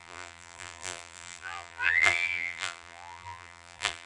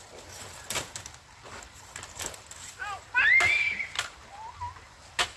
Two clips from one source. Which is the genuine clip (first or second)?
second